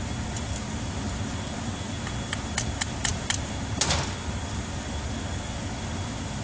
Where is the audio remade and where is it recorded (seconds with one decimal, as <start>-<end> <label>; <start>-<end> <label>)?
0.0-6.4 recorded